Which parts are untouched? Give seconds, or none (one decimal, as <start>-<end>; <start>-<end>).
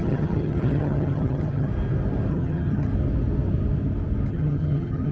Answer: 1.7-2.3; 2.9-4.3